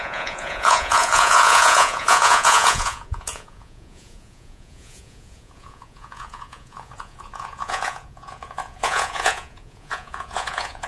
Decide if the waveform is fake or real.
fake